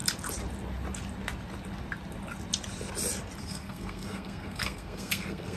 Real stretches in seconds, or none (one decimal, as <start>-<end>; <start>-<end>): 0.0-3.4